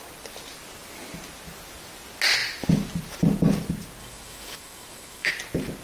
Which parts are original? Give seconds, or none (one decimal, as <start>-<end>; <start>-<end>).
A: 0.0-4.0; 5.3-5.8